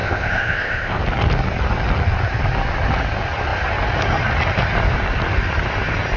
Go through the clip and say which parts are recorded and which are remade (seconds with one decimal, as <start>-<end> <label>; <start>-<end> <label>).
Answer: 0.0-1.0 remade; 1.0-6.2 recorded